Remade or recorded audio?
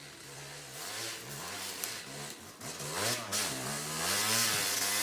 recorded